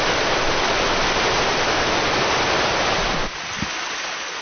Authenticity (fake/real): real